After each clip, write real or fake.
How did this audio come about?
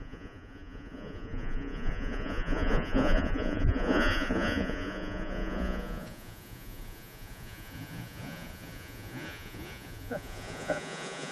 fake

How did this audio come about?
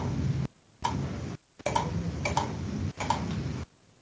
real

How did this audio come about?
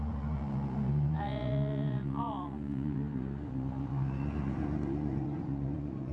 fake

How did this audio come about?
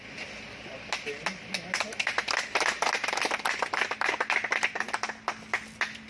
real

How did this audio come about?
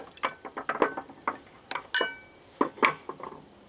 real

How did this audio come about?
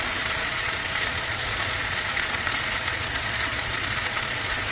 fake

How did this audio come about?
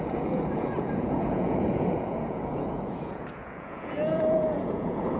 fake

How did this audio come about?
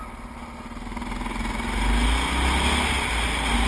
real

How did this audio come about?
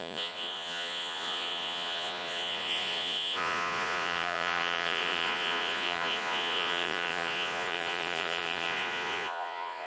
fake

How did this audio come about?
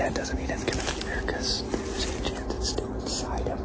real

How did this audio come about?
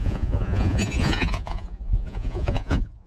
fake